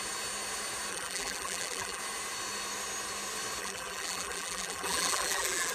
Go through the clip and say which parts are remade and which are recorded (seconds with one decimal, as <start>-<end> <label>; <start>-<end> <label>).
0.0-0.9 recorded; 0.9-2.0 remade; 2.0-3.6 recorded; 3.6-5.7 remade